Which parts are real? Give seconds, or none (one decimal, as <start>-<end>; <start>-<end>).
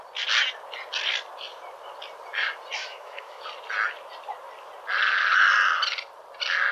0.0-2.8; 3.4-6.7